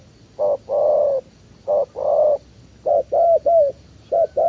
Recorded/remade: recorded